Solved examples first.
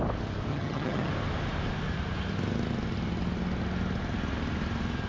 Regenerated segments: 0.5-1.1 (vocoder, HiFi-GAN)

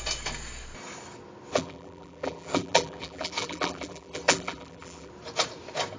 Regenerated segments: 1.5-5.1 (vocoder, BigVGAN v2)

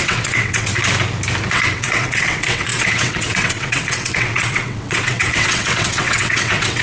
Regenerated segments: 0.0-0.7 (vocoder, WaveNeXt); 1.5-6.8

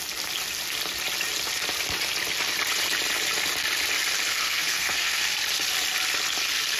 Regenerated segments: 4.3-5.2 (codec, SNAC)

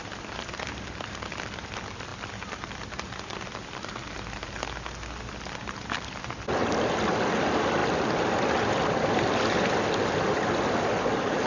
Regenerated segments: 0.0-11.5 (vocoder, BigVGAN v2)

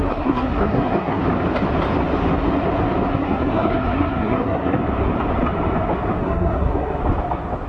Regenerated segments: 0.0-1.2 (codec, SNAC); 3.1-4.8; 6.2-7.0

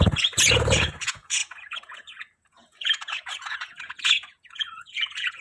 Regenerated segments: 0.0-5.4 (vocoder, Vocos)